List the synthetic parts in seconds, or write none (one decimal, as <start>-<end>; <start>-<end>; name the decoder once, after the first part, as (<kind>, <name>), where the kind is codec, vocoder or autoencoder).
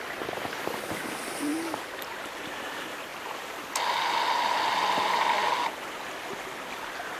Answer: none